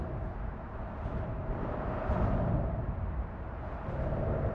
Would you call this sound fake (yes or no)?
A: yes